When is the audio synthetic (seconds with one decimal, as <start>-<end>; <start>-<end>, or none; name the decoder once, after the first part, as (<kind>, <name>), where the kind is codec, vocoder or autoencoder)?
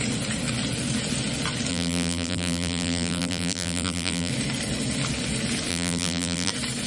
1.7-4.3 (vocoder, BigVGAN v2); 5.7-6.5